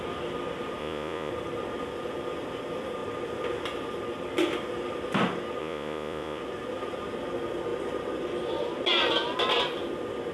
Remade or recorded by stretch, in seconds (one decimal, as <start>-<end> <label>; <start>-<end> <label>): 0.0-0.8 recorded; 0.8-1.3 remade; 1.3-5.6 recorded; 5.6-6.4 remade; 6.4-10.3 recorded